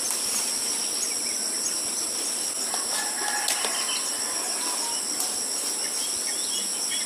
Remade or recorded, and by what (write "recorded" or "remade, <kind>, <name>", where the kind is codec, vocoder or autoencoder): recorded